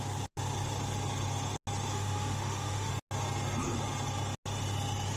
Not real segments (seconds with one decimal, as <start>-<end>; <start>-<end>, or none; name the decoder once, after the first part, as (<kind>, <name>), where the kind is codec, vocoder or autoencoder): 1.9-2.9 (autoencoder, DAC-VAE)